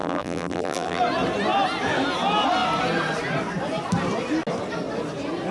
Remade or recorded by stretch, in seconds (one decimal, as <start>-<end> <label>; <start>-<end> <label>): 0.0-1.0 remade; 1.0-5.5 recorded